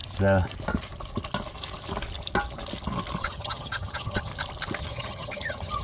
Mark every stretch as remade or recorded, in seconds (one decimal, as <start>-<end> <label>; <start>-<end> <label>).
0.0-3.2 recorded; 3.2-4.3 remade; 4.3-4.8 recorded; 4.8-5.8 remade